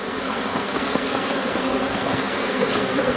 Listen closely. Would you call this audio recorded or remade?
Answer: remade